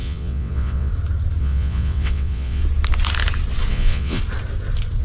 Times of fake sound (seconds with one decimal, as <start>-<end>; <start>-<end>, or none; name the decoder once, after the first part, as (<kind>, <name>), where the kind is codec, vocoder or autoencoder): 0.0-0.9 (vocoder, WaveNeXt); 1.4-2.6; 3.7-4.2